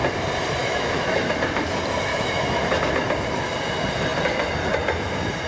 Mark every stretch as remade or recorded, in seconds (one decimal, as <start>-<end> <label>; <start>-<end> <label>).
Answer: 0.0-0.6 recorded; 0.6-1.3 remade; 1.3-2.1 recorded; 2.1-2.8 remade; 2.8-5.5 recorded